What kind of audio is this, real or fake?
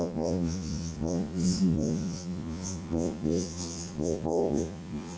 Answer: fake